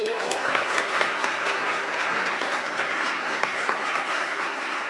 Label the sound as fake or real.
fake